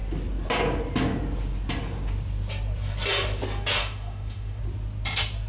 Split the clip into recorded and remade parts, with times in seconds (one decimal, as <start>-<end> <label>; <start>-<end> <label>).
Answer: 0.0-3.8 recorded; 3.8-4.6 remade; 4.6-5.5 recorded